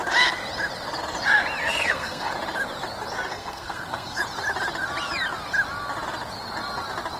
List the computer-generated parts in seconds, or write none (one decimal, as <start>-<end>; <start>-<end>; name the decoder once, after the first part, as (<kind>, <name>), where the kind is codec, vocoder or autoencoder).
1.6-2.3 (codec, SNAC); 3.3-4.2